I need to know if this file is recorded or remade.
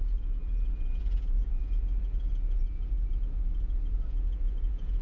remade